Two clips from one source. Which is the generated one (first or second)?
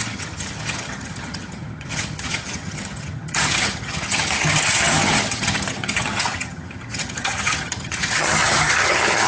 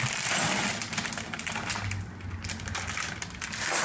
first